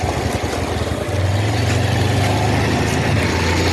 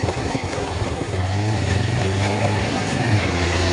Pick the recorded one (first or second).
first